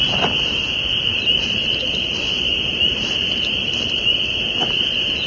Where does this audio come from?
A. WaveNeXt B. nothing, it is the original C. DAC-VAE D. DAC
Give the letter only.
B